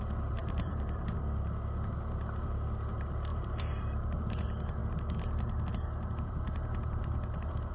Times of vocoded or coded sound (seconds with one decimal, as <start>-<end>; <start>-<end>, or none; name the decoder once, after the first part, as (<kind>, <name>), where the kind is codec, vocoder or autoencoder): 0.4-1.0 (vocoder, BigVGAN v2); 3.3-3.9